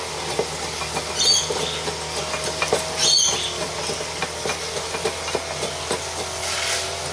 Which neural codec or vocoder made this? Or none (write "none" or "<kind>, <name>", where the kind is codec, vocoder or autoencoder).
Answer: none